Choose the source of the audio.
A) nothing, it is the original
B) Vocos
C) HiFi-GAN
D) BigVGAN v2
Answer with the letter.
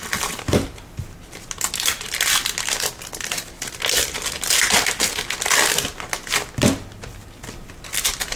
A